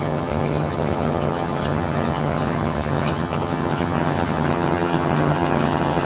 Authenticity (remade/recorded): remade